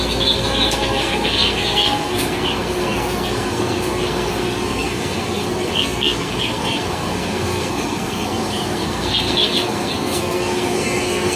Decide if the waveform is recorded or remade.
remade